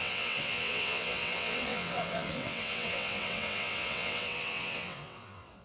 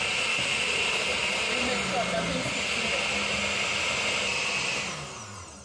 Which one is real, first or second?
second